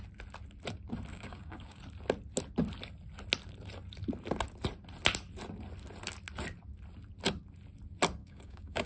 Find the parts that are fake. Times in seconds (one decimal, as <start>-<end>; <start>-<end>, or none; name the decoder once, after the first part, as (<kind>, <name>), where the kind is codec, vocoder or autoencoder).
1.1-1.8 (codec, DAC); 8.2-8.9